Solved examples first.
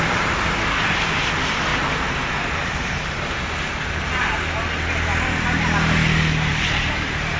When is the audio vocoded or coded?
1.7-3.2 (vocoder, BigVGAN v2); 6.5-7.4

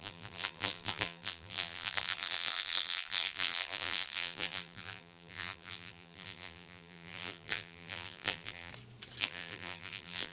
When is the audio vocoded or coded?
0.0-8.7 (vocoder, BigVGAN v2); 9.2-10.3

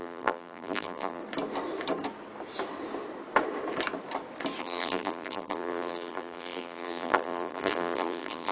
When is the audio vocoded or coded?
0.0-1.2 (vocoder, BigVGAN v2); 4.6-8.5

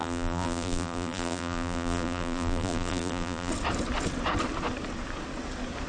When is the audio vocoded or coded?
0.0-3.5 (vocoder, BigVGAN v2)

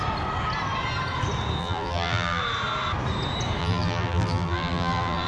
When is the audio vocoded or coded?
1.6-2.4 (vocoder, BigVGAN v2); 3.6-5.3

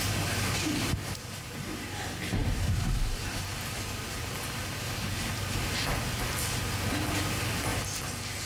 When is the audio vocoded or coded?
none